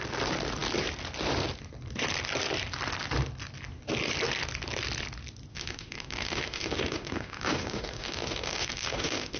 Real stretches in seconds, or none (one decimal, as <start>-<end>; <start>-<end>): 0.0-5.5